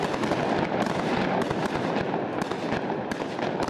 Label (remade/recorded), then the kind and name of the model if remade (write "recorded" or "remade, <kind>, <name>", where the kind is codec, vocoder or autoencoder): recorded